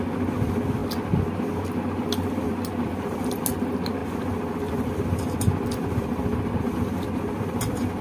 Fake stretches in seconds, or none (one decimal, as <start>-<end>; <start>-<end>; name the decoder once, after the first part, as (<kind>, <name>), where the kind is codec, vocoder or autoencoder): none